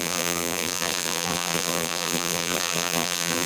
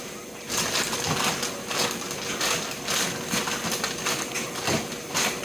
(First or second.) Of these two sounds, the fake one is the first